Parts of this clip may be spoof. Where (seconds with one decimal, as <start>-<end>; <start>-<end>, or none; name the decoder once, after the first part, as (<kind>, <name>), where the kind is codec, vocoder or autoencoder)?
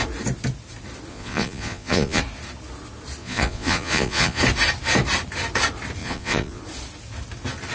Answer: 1.1-2.2 (vocoder, Vocos); 3.2-4.4; 6.0-6.6